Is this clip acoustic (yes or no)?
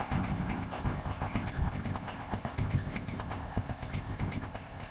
no